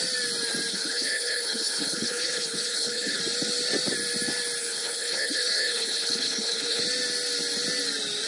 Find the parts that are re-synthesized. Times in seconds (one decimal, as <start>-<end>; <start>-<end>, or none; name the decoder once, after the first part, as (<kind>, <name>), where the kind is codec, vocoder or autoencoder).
0.7-3.2 (codec, HILCodec); 4.6-6.8